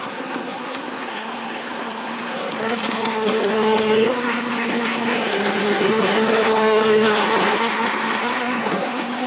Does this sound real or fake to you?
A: fake